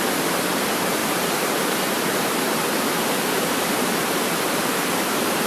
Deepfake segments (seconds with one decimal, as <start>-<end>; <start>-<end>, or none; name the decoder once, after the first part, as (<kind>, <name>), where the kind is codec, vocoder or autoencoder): 0.0-5.5 (vocoder, BigVGAN v2)